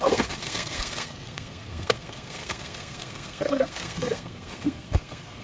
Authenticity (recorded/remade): remade